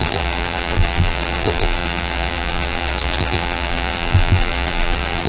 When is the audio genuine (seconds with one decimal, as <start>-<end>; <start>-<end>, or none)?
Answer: none